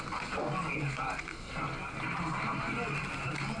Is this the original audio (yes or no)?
yes